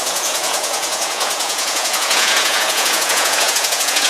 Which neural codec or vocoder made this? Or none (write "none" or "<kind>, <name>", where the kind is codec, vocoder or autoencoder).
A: vocoder, Vocos